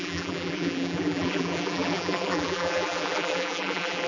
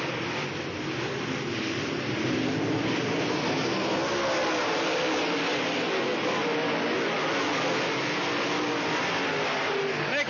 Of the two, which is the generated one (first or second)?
first